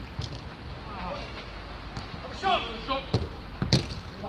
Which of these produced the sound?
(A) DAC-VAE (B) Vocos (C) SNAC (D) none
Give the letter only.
D